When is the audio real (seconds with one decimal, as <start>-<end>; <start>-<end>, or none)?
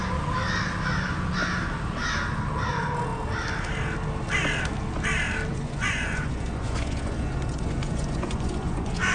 0.0-5.5